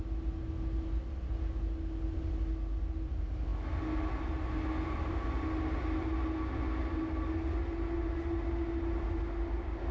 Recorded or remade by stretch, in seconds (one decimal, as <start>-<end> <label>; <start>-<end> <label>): 0.0-9.9 recorded